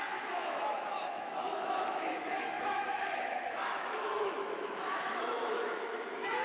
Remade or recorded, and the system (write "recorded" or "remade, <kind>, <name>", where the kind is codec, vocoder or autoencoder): remade, autoencoder, DAC-VAE